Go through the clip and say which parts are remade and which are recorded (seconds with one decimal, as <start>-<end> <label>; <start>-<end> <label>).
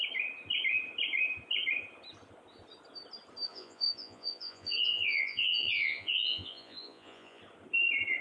0.0-3.5 recorded; 3.5-7.4 remade; 7.4-8.2 recorded